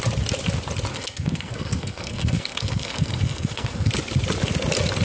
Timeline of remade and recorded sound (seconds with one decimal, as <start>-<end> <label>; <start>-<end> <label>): 0.0-0.9 recorded; 0.9-3.9 remade; 3.9-5.0 recorded